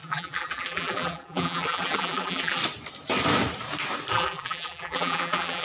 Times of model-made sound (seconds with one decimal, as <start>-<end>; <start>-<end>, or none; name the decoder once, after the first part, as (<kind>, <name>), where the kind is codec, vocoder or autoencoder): 0.0-2.6 (vocoder, BigVGAN v2); 4.1-5.6